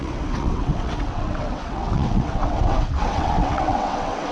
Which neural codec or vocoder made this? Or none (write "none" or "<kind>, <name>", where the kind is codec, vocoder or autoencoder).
vocoder, WaveNeXt